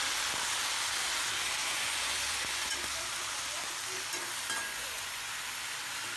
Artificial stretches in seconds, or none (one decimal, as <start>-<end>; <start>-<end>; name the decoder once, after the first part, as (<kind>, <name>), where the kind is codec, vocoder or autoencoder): 1.6-2.9 (vocoder, Vocos); 4.6-5.3